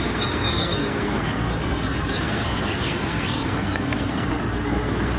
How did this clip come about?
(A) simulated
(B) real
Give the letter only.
A